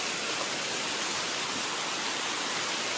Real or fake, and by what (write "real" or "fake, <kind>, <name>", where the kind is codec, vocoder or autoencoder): real